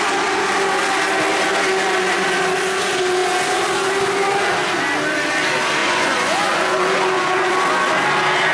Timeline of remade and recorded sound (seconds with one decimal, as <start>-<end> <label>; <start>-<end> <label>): 0.0-5.8 recorded; 5.8-7.5 remade; 7.5-8.5 recorded